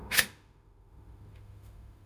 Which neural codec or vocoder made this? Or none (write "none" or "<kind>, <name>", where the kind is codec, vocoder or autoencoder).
autoencoder, DAC-VAE